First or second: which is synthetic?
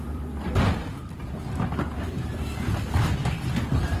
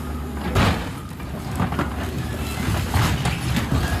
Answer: first